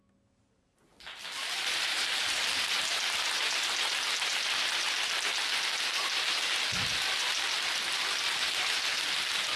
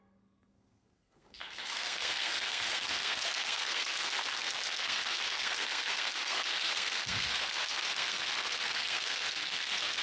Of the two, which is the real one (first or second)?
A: first